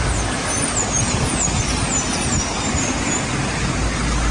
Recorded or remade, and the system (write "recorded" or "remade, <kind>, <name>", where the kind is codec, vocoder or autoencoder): recorded